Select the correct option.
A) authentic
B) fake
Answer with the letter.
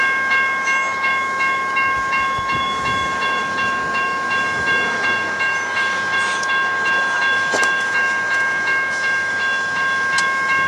B